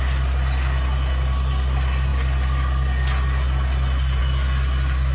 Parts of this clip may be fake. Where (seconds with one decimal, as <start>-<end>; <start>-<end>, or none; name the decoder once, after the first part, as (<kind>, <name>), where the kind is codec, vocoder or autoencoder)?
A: none